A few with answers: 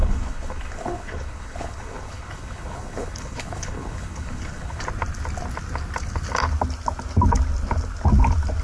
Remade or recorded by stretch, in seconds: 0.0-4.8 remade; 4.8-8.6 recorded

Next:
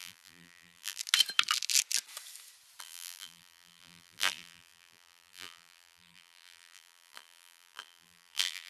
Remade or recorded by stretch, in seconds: 0.0-1.0 remade; 1.0-2.8 recorded; 2.8-8.7 remade

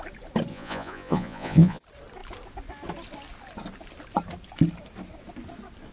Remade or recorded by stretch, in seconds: 0.0-0.5 recorded; 0.5-1.8 remade; 1.8-5.9 recorded